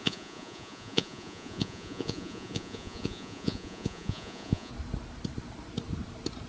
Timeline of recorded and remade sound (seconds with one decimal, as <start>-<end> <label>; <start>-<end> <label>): 0.0-4.7 remade; 4.7-6.5 recorded